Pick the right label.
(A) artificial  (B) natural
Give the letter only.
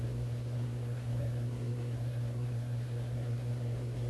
A